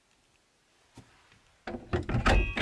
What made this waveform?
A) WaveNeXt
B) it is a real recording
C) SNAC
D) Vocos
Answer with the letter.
B